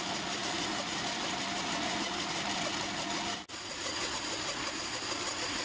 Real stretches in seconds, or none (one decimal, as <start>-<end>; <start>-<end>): 0.0-5.6